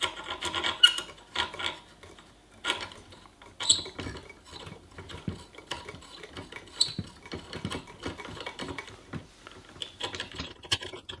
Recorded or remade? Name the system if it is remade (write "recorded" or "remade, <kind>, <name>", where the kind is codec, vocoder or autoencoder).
recorded